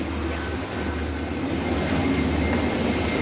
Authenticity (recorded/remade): recorded